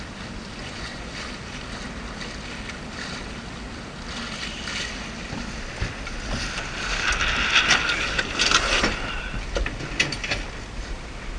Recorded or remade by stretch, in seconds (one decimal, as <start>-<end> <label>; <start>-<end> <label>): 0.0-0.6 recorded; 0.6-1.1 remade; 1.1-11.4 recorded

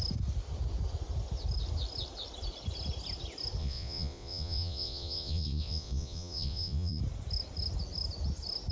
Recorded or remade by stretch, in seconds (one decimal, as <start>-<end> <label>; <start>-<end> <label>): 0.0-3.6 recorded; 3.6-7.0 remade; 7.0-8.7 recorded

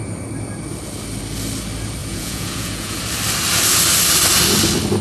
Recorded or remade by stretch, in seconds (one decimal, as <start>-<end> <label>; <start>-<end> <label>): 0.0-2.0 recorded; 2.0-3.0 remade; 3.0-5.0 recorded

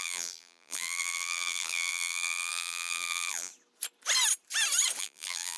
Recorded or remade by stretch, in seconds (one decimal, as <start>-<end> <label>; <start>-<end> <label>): 0.0-3.5 remade; 3.5-5.0 recorded; 5.0-5.6 remade